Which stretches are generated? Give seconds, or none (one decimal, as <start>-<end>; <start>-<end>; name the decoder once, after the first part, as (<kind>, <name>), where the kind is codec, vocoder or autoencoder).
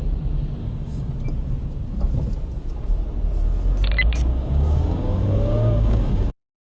0.6-1.1 (codec, DAC); 4.3-6.3